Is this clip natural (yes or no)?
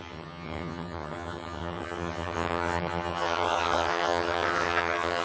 no